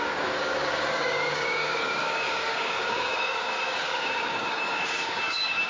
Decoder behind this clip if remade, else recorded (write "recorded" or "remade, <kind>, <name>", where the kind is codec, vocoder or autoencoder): remade, codec, DAC